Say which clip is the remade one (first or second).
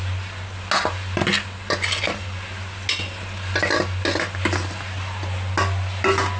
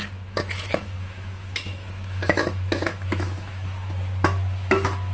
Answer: second